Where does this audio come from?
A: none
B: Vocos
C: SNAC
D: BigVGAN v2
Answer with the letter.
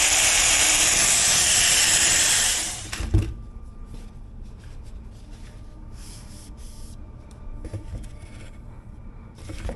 D